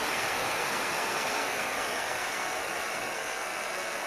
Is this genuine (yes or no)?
no